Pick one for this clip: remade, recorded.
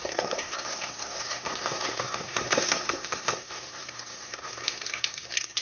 remade